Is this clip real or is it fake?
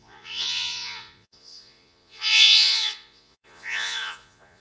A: fake